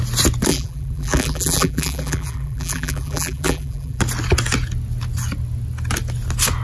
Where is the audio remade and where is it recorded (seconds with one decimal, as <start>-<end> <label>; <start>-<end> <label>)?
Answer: 0.0-0.5 recorded; 0.5-4.0 remade; 4.0-6.6 recorded

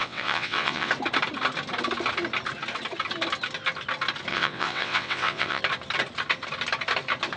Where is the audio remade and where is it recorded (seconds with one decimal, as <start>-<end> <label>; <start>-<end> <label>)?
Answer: 0.0-0.9 remade; 0.9-4.3 recorded; 4.3-5.6 remade; 5.6-7.4 recorded